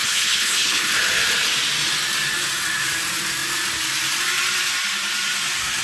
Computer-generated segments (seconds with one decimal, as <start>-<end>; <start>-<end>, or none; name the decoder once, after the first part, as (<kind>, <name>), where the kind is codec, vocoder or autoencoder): 0.0-0.9 (codec, HILCodec)